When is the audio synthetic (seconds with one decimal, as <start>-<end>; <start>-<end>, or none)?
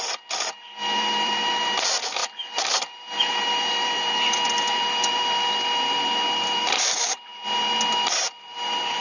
0.0-7.3; 8.0-9.0